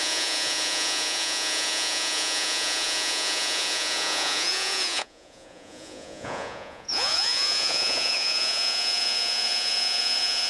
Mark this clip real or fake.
fake